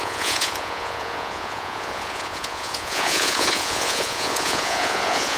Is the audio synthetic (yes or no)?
yes